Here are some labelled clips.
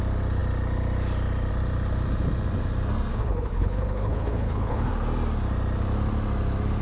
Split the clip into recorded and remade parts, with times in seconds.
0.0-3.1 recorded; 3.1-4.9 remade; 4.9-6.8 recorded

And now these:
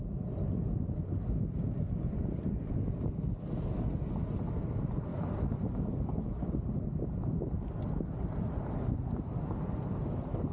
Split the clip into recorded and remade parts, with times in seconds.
0.0-10.5 recorded